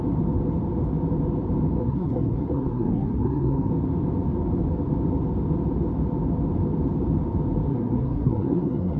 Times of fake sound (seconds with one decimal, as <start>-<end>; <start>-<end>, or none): 1.8-3.7; 7.7-9.0